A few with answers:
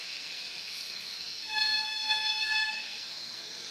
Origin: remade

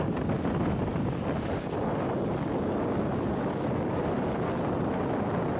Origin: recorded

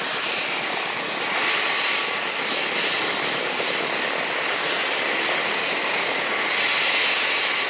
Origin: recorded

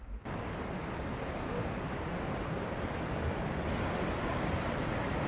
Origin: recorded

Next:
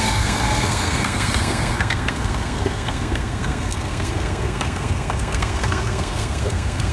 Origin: remade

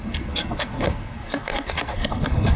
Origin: remade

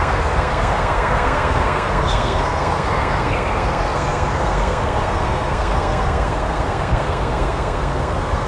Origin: remade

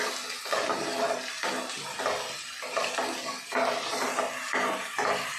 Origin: recorded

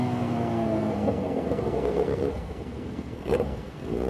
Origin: remade